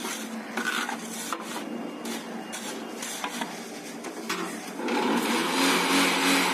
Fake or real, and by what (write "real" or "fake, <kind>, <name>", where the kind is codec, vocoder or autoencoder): real